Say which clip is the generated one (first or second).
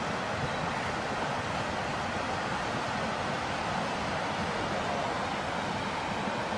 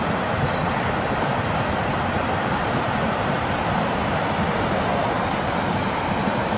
second